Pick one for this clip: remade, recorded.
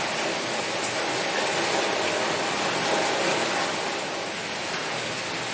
recorded